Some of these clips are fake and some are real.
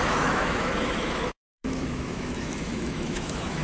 fake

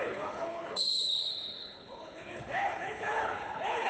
fake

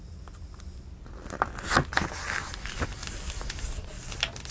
real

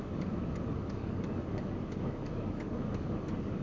fake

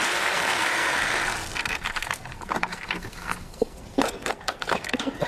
fake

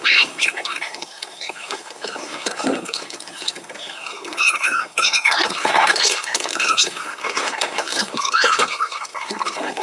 fake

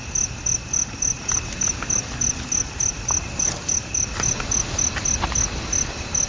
real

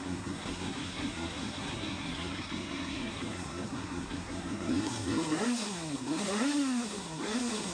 fake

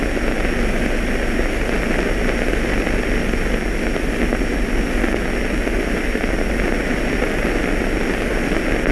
real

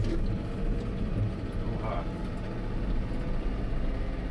real